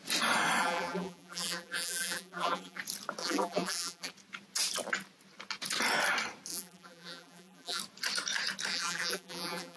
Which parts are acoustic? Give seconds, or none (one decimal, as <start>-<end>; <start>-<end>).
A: 0.0-0.6; 2.8-3.2; 4.1-6.5; 7.8-8.7